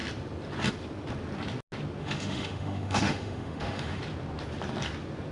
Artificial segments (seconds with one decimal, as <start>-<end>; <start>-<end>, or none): 2.0-4.0